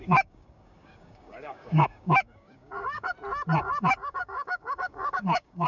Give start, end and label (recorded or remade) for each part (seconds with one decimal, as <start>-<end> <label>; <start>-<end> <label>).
0.0-3.1 remade; 3.1-3.6 recorded; 3.6-5.7 remade